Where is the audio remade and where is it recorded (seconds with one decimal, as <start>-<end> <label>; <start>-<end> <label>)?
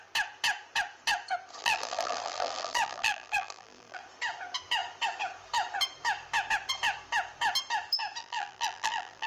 0.0-1.6 recorded; 1.6-4.0 remade; 4.0-8.2 recorded; 8.2-9.3 remade